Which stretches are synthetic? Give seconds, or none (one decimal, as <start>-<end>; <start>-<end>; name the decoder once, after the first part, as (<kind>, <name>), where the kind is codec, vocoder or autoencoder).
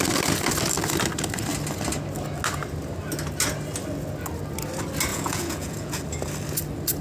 5.1-6.0 (vocoder, Vocos)